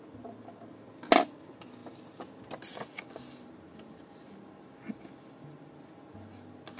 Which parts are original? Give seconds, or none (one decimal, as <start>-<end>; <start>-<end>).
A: 0.0-6.8